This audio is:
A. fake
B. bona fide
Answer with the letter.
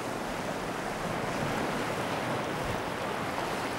B